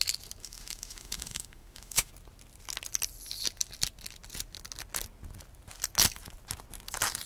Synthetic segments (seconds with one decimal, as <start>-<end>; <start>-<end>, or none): 0.4-2.1